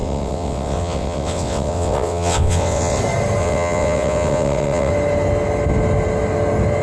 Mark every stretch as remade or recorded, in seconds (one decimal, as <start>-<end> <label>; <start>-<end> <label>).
0.0-3.0 remade; 3.0-3.4 recorded; 3.4-4.9 remade; 4.9-6.8 recorded